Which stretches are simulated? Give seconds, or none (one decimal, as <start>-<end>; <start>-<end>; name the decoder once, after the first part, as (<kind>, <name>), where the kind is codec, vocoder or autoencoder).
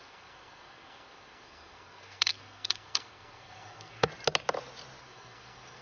0.0-4.1 (codec, SNAC); 5.0-5.8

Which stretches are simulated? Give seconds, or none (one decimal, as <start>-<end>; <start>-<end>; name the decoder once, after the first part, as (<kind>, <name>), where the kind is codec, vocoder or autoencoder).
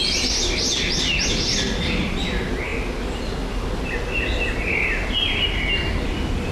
none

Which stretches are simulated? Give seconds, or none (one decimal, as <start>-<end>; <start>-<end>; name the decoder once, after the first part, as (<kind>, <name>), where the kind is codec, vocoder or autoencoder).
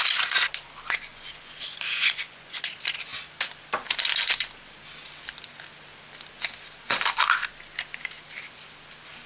1.1-2.6 (vocoder, Vocos)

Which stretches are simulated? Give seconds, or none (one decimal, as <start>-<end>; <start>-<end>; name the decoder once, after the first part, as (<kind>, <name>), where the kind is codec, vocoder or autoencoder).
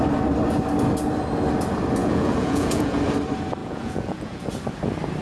2.0-3.0 (vocoder, Vocos); 3.6-4.5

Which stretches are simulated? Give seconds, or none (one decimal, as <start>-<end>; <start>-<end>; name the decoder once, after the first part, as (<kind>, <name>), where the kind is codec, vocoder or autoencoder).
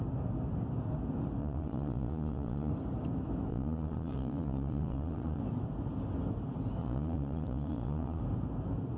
1.4-2.7 (vocoder, Vocos); 3.5-5.4; 6.8-8.2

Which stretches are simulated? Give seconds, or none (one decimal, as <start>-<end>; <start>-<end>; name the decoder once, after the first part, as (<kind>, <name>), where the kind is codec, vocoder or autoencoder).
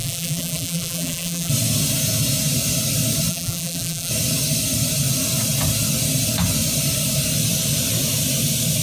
0.0-1.5 (vocoder, BigVGAN v2); 3.3-4.1